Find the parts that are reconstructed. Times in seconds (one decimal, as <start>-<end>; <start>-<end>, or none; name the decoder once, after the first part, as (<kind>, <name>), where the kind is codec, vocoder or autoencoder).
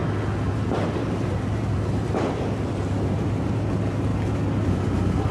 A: 0.5-4.1 (vocoder, BigVGAN v2)